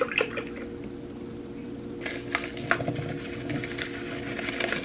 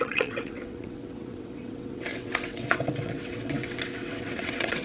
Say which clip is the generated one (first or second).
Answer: second